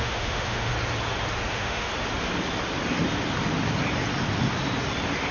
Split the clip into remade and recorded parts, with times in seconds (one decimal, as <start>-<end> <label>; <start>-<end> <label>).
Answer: 0.0-0.7 remade; 0.7-1.5 recorded; 1.5-1.9 remade; 1.9-5.3 recorded